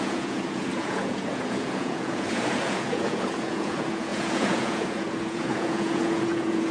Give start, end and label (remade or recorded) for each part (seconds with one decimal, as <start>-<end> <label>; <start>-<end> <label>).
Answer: 0.0-6.7 remade